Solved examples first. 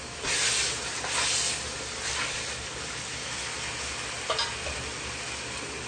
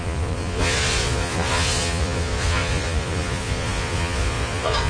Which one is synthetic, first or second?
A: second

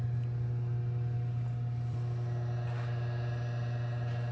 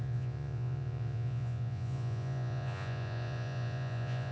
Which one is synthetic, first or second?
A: second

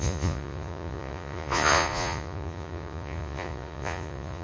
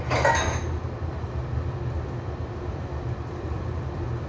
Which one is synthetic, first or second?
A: first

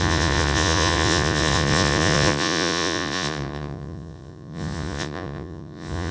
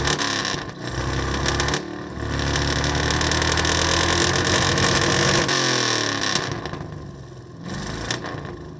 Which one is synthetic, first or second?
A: first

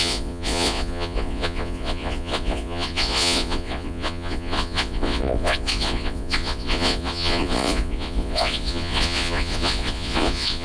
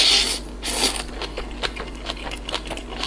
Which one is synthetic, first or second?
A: first